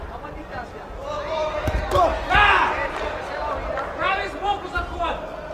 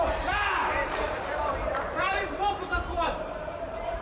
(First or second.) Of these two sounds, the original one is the first